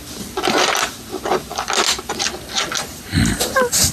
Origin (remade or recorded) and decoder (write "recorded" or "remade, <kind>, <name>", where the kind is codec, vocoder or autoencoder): recorded